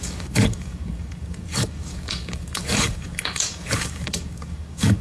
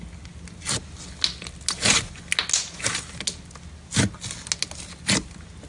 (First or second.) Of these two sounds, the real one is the second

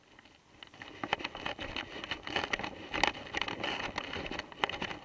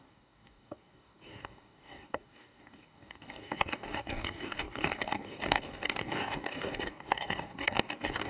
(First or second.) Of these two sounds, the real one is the first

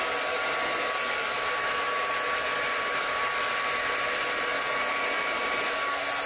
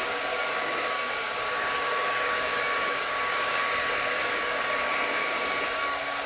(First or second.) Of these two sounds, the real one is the first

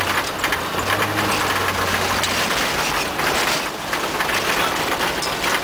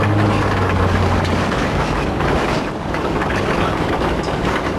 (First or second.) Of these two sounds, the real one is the first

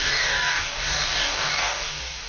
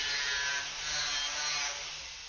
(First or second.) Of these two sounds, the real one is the second